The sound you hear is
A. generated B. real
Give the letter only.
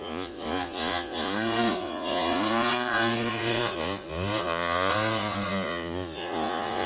A